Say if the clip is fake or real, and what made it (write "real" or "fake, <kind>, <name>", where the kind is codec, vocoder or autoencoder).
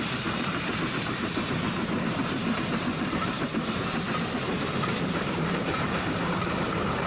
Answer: fake, vocoder, BigVGAN v2